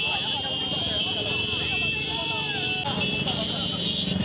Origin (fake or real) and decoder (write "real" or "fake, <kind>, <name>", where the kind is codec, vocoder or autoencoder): real